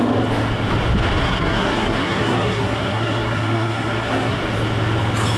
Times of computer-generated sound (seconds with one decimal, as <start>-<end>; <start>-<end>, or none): 1.2-4.4